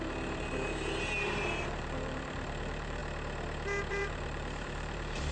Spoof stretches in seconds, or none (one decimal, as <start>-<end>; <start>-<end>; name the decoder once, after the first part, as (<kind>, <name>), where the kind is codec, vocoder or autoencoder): 0.0-3.0 (vocoder, BigVGAN v2); 3.9-5.3